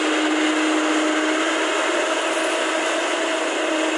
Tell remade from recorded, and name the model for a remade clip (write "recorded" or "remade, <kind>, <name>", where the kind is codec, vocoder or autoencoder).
recorded